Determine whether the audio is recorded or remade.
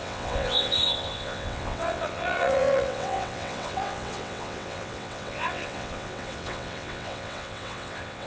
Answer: remade